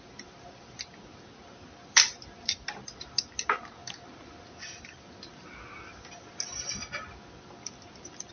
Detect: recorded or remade recorded